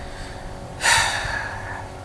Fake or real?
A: real